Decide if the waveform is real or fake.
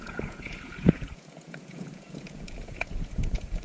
fake